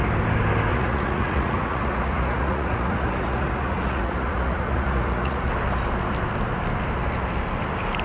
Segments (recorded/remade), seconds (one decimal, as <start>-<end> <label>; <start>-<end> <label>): 0.0-0.7 recorded; 0.7-5.5 remade; 5.5-8.0 recorded